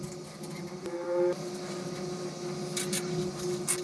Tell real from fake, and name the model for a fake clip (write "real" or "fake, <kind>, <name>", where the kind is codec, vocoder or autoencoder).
real